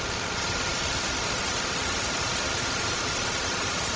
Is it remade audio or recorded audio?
remade